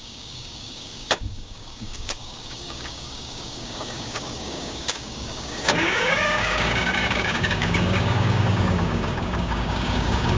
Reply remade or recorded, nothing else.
remade